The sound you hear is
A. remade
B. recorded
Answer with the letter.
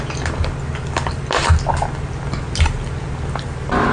B